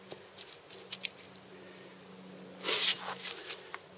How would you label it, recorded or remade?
recorded